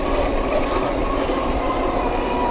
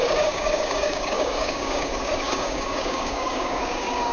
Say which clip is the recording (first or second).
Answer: first